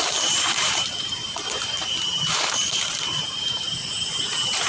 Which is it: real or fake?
fake